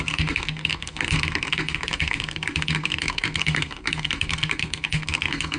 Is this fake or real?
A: fake